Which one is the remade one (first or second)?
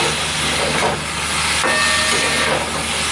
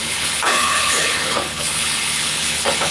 second